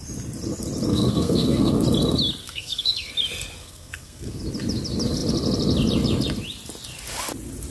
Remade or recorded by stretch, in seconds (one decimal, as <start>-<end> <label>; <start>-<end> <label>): 0.0-0.9 recorded; 0.9-1.7 remade; 1.7-2.4 recorded; 2.4-3.1 remade; 3.1-3.6 recorded; 3.6-4.4 remade; 4.4-7.7 recorded